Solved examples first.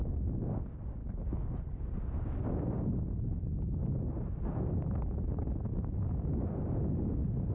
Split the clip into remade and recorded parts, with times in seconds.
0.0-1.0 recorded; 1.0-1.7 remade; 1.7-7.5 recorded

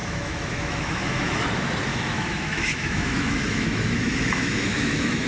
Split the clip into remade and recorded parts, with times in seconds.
0.0-1.4 remade; 1.4-1.9 recorded; 1.9-5.3 remade